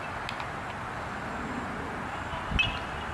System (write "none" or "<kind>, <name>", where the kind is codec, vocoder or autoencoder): none